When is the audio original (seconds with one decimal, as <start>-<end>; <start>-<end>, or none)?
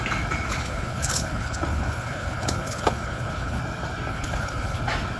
0.0-0.5; 3.6-4.1; 4.8-5.2